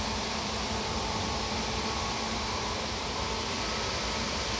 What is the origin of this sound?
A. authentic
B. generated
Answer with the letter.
B